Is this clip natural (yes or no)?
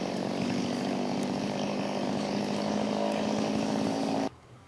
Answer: no